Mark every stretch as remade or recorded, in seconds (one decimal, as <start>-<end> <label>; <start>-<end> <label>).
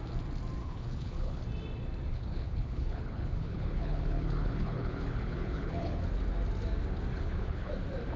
0.0-0.6 recorded; 0.6-1.4 remade; 1.4-2.1 recorded; 2.1-6.0 remade; 6.0-7.1 recorded; 7.1-7.7 remade; 7.7-8.2 recorded